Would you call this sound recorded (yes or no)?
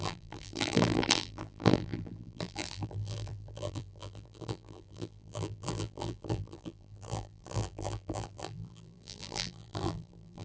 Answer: no